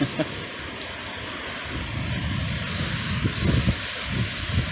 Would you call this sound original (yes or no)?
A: yes